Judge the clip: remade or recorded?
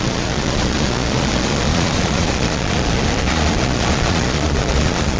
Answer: remade